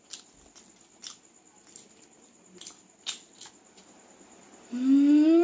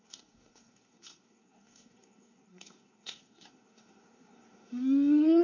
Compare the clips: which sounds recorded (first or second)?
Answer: first